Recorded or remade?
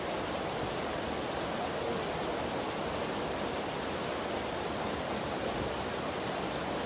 recorded